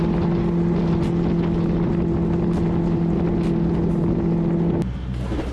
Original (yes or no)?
yes